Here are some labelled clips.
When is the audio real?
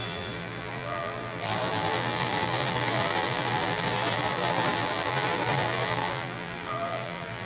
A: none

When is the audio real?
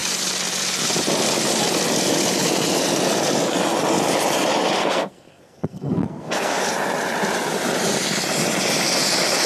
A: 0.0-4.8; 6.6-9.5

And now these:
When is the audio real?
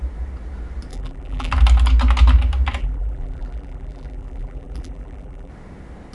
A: 0.0-0.9; 1.5-2.8; 5.5-6.1